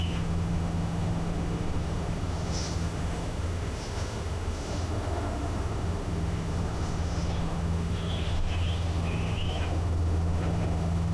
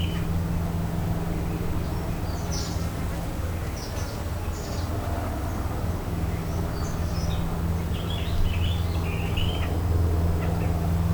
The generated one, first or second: first